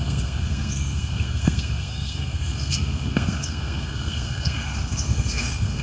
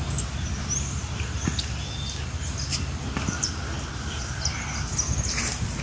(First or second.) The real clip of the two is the second